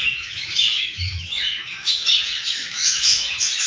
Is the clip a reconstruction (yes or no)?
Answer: yes